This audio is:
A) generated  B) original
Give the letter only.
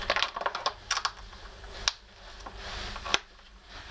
B